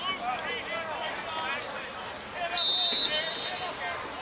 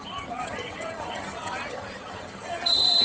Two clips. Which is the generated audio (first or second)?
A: second